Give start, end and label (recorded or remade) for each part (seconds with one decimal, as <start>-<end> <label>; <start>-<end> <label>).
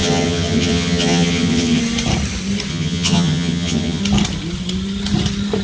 0.0-1.8 remade; 1.8-2.7 recorded; 2.7-4.0 remade; 4.0-5.6 recorded